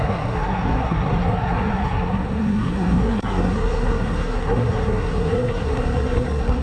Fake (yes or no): yes